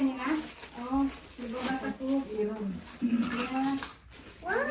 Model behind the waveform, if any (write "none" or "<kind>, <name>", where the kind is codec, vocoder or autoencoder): none